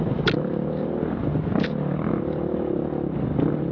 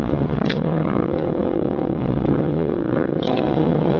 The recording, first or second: first